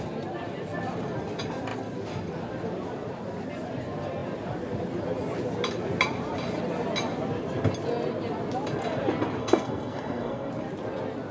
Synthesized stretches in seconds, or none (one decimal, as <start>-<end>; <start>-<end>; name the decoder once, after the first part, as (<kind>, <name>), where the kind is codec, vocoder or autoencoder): 9.4-10.5 (codec, SNAC)

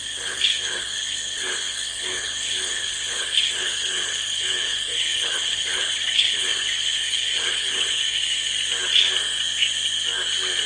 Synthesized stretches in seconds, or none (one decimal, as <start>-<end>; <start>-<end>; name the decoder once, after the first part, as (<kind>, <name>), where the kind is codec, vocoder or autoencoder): 0.0-8.5 (codec, HILCodec)